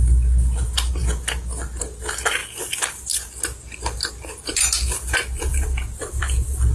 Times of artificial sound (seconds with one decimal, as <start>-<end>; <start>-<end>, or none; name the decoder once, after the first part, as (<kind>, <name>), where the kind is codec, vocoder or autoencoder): none